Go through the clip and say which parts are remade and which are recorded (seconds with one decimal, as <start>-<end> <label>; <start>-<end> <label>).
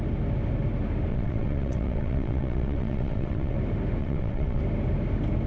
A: 0.0-1.1 recorded; 1.1-3.6 remade; 3.6-4.0 recorded; 4.0-4.6 remade; 4.6-5.5 recorded